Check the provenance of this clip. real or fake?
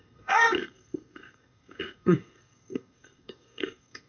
fake